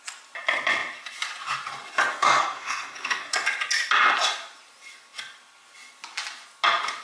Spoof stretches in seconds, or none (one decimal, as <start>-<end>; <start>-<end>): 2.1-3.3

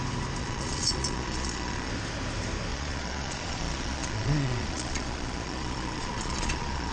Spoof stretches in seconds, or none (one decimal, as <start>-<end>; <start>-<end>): 0.4-1.9; 2.7-6.9

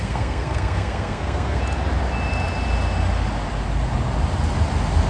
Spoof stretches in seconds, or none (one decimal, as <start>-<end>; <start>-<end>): 0.0-1.6